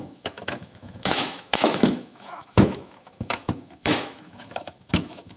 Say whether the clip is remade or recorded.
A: remade